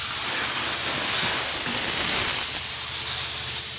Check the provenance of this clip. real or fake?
real